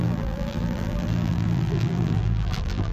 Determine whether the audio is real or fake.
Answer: fake